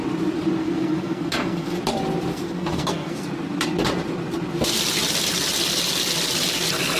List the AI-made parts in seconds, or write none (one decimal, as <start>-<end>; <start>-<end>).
0.6-1.8; 2.3-3.3